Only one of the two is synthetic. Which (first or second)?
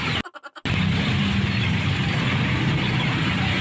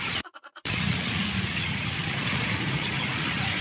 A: second